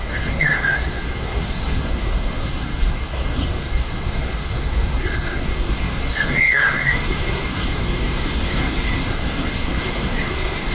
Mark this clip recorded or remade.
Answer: remade